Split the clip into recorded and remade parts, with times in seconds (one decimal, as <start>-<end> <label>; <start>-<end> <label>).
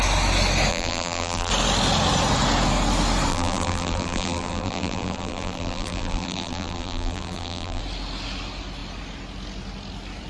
0.0-0.7 recorded; 0.7-1.5 remade; 1.5-3.3 recorded; 3.3-7.8 remade; 7.8-10.3 recorded